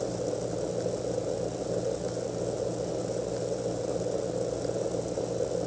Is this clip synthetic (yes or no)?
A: no